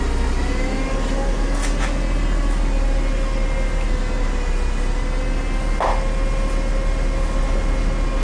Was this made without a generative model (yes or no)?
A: yes